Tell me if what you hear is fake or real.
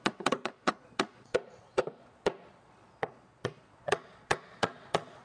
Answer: fake